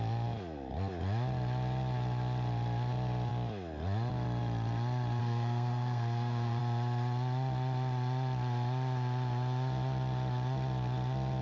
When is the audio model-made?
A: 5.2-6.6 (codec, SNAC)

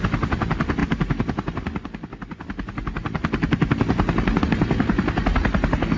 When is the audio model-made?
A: none

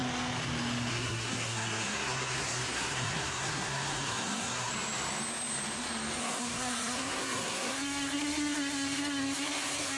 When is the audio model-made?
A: 0.9-4.7 (codec, SNAC); 6.2-10.0